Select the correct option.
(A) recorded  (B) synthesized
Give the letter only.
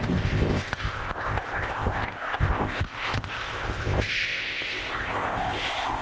B